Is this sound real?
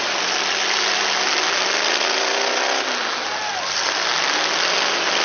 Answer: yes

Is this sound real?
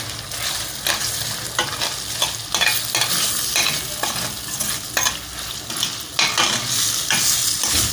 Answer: yes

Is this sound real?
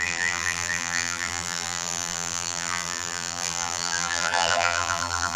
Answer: no